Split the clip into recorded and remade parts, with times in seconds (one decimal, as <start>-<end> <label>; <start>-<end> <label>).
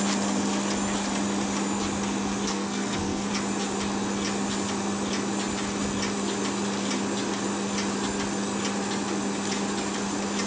0.0-2.5 recorded; 2.5-3.3 remade; 3.3-10.5 recorded